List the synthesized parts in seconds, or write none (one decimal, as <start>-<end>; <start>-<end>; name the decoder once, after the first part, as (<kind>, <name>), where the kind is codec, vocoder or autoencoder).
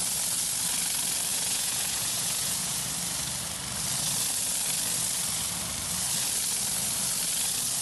1.3-2.8 (vocoder, Vocos)